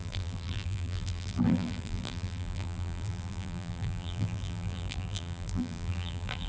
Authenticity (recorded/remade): remade